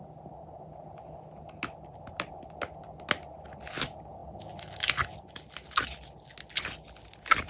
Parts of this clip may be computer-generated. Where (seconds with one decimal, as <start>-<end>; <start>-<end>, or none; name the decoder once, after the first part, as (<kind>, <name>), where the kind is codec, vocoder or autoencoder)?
none